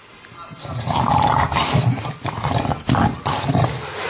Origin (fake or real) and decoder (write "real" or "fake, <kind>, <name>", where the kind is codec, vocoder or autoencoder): real